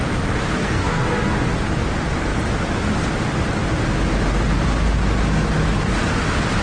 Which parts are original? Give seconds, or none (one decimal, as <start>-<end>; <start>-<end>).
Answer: 0.0-0.6; 1.1-6.6